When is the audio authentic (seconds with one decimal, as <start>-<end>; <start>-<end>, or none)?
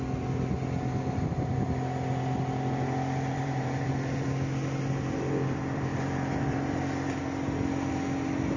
0.0-3.3; 3.9-5.9; 7.2-8.6